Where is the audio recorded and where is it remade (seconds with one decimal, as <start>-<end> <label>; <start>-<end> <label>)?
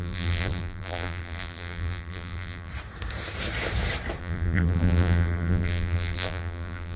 0.0-2.7 remade; 2.7-4.2 recorded; 4.2-7.0 remade